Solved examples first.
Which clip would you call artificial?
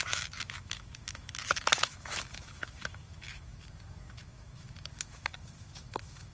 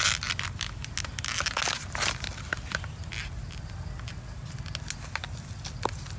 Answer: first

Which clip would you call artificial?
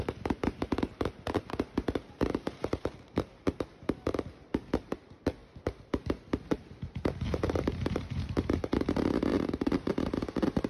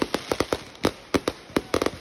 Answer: first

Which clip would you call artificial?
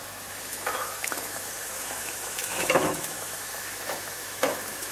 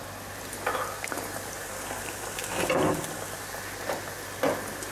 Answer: first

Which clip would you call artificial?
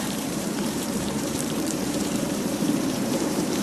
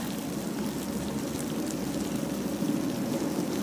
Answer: first